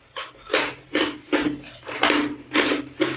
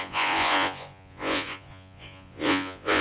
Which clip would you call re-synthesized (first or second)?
second